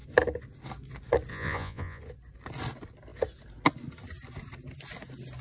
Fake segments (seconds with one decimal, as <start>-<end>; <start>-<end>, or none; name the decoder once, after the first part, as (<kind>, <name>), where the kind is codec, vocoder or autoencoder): 1.3-2.0 (vocoder, Vocos)